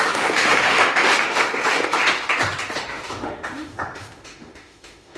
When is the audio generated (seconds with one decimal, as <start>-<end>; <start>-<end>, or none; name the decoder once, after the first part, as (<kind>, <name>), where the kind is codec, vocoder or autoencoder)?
0.0-2.0 (autoencoder, DAC-VAE); 2.8-5.2